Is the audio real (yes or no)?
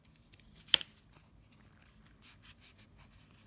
yes